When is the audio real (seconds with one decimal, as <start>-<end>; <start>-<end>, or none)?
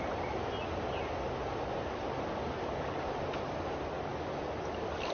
0.0-5.1